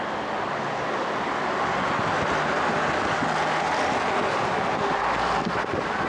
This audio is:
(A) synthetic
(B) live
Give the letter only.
B